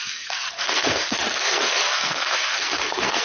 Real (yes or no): no